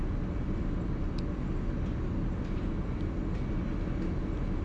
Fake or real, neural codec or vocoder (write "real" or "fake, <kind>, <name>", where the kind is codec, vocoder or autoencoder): real